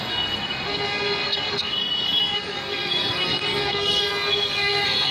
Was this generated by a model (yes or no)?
yes